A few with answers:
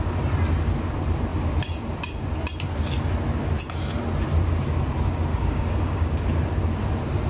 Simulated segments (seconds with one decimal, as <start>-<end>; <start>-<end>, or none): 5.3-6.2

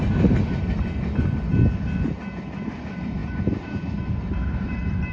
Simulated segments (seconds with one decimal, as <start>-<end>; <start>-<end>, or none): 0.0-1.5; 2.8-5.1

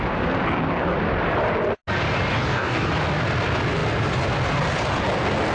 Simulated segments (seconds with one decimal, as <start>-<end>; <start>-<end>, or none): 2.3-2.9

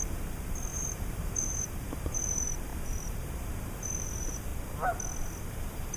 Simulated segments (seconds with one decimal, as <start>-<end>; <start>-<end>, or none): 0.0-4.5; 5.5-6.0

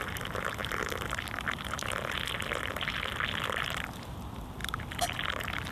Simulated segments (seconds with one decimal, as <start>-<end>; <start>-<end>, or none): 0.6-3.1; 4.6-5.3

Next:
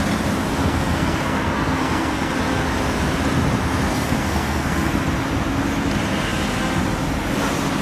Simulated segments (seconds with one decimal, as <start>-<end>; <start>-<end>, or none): 0.6-2.3; 3.9-5.0